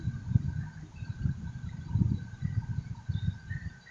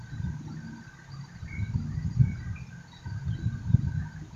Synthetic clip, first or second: first